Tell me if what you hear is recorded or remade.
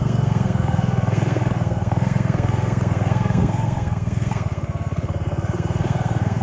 remade